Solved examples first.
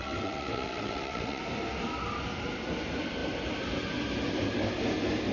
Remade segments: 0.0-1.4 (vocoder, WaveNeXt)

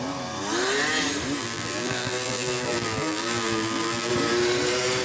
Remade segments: 1.4-4.1 (vocoder, BigVGAN v2)